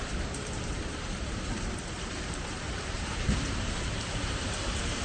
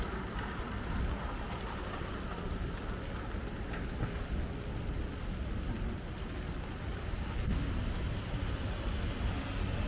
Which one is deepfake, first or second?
first